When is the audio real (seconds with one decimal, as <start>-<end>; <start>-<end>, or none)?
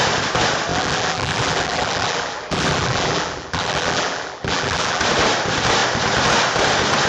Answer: 0.0-0.7; 5.0-7.1